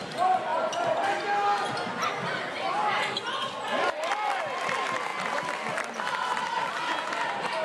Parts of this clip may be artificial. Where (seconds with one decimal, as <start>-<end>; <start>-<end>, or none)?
none